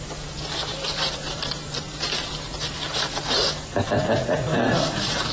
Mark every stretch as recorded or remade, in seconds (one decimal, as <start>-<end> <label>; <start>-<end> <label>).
0.0-0.7 recorded; 0.7-1.8 remade; 1.8-5.3 recorded